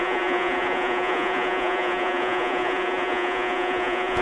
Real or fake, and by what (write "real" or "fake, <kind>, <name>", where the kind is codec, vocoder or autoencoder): fake, vocoder, Vocos